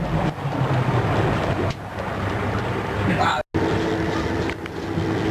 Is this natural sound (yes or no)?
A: yes